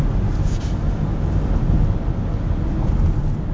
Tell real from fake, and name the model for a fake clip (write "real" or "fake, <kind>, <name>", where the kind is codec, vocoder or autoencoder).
real